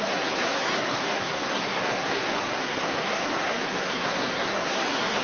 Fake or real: fake